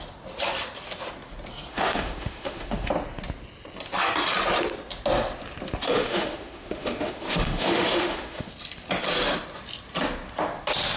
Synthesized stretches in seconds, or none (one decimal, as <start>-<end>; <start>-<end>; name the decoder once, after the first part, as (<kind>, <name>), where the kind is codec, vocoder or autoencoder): 1.7-2.9 (autoencoder, DAC-VAE); 5.9-8.5